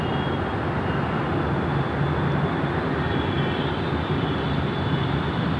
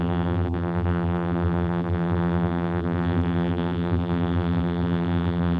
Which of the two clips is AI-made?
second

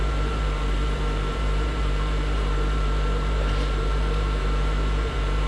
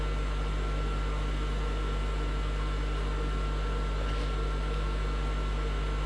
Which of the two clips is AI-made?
first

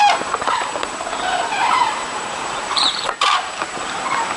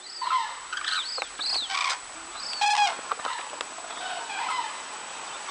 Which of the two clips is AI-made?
first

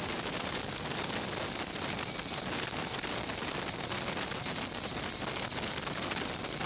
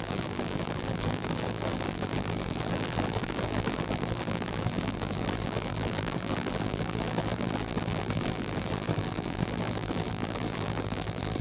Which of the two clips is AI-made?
second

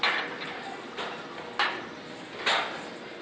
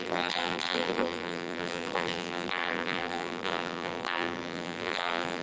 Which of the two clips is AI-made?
second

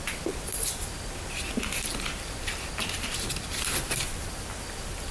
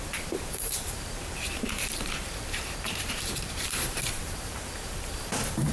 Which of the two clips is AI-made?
second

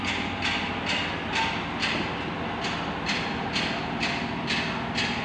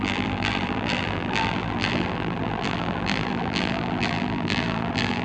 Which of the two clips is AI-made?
second